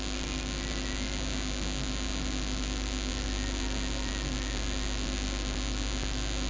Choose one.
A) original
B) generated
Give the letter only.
A